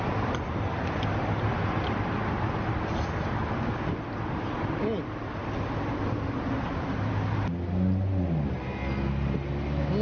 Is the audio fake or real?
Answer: real